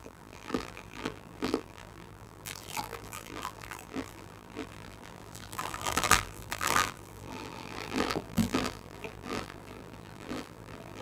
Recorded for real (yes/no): no